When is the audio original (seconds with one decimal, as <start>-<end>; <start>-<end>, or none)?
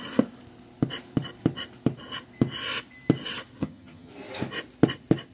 0.0-3.6; 4.1-5.3